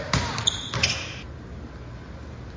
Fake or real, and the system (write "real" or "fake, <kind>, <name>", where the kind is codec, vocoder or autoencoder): real